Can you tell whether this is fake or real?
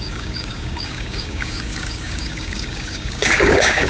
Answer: fake